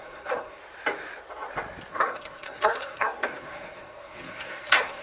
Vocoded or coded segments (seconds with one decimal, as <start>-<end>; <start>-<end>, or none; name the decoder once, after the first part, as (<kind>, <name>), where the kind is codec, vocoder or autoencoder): 0.0-0.6 (codec, SNAC); 1.9-5.0